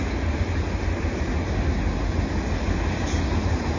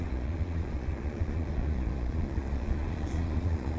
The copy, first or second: second